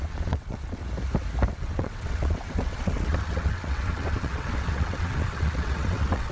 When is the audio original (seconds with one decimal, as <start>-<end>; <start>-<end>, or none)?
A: 0.8-1.5

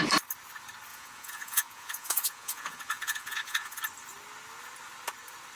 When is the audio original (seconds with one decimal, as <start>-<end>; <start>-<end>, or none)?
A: 0.0-0.9; 3.8-5.6

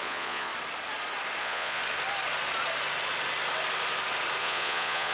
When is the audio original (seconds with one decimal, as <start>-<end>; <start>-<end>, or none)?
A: 0.5-1.4; 1.8-4.4

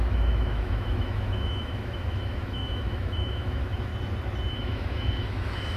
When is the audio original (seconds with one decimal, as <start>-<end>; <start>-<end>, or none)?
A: 3.9-4.5

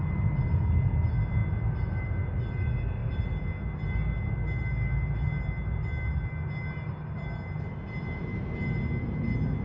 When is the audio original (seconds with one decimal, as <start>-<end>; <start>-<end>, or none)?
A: 0.0-9.6

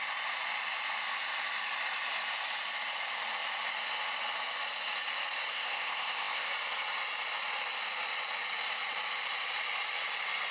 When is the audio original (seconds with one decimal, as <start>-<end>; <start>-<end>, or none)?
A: 0.0-5.5; 6.5-10.5